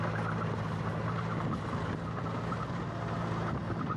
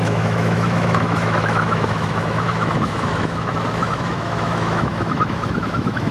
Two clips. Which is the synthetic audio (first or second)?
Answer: second